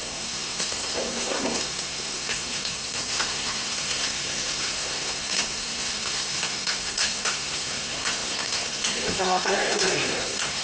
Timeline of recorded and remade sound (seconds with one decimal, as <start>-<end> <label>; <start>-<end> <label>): 0.0-10.6 remade